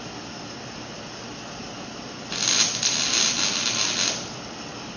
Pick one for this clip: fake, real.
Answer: real